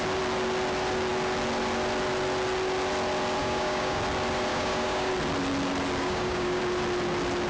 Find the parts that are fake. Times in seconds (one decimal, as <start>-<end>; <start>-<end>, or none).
3.4-4.0; 4.5-5.1; 6.0-6.6